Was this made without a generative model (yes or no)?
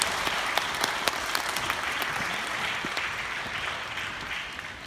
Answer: yes